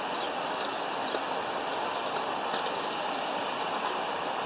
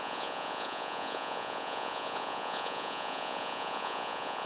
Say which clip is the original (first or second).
first